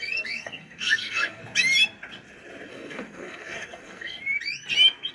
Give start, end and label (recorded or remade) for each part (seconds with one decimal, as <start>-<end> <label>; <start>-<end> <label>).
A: 0.0-1.4 remade; 1.4-2.7 recorded; 2.7-4.2 remade; 4.2-5.1 recorded